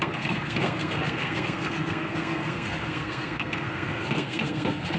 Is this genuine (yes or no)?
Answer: no